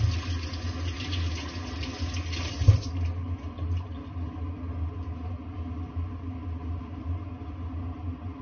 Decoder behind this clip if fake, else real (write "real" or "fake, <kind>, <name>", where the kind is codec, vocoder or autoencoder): real